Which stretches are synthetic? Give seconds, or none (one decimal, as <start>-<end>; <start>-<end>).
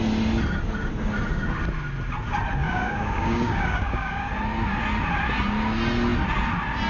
2.6-4.3